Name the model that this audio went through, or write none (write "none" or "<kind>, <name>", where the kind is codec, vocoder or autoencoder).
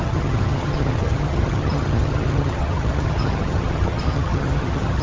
vocoder, HiFi-GAN